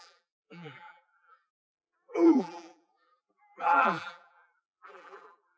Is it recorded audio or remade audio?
remade